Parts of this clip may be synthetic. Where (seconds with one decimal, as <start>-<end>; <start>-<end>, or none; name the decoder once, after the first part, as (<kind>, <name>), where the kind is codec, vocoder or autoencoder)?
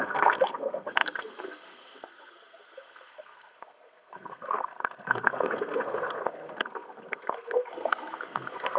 0.0-8.8 (codec, SNAC)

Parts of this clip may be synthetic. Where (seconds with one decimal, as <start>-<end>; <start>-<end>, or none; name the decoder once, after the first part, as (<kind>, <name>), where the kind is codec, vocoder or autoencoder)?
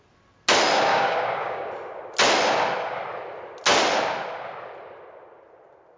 0.9-1.7 (codec, DAC)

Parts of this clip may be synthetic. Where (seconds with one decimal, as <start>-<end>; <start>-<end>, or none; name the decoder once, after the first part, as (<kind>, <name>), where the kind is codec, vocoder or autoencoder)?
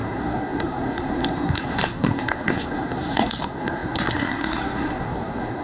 0.0-5.6 (codec, SNAC)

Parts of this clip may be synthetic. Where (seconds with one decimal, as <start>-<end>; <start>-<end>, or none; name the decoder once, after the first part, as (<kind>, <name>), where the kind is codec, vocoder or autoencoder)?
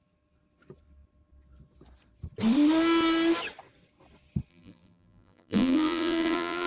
4.5-6.7 (vocoder, BigVGAN v2)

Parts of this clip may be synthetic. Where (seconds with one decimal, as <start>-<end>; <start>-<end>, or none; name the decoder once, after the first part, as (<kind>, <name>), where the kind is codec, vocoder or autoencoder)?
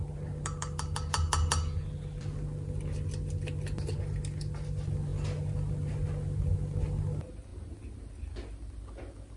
none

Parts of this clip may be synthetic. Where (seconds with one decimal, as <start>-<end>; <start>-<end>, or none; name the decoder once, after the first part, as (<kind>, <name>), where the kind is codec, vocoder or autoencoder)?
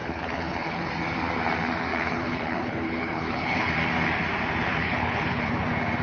0.0-0.9 (codec, HILCodec); 1.9-3.7; 4.7-5.5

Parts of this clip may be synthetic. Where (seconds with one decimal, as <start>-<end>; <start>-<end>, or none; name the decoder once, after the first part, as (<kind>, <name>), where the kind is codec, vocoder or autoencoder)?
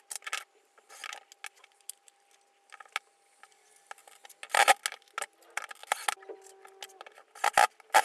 none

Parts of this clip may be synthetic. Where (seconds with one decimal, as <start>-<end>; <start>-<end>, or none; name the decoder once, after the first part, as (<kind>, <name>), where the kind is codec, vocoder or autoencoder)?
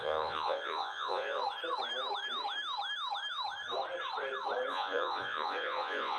0.0-1.4 (vocoder, Vocos); 4.7-6.2